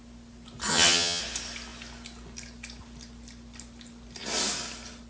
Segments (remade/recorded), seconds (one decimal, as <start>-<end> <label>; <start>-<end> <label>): 0.0-0.7 recorded; 0.7-1.2 remade; 1.2-5.1 recorded